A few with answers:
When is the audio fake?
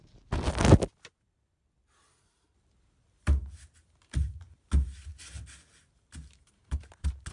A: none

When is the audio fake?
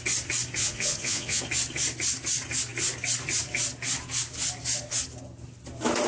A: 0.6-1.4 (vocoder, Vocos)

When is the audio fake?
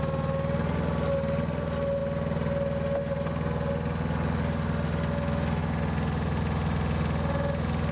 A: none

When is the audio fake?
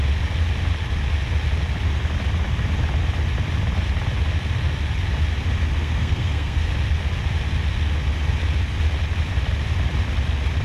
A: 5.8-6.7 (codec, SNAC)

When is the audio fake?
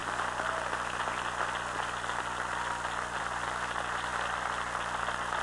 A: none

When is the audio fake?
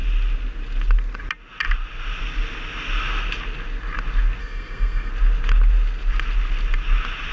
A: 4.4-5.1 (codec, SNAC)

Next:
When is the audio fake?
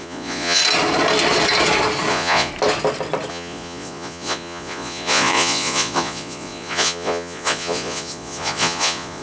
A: 0.0-0.6 (vocoder, Vocos); 2.1-2.5; 3.3-9.2